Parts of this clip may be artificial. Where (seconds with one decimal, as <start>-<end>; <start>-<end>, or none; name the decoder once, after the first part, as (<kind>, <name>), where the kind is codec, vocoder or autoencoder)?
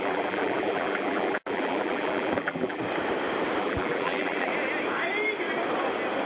0.0-2.8 (vocoder, BigVGAN v2); 3.6-4.5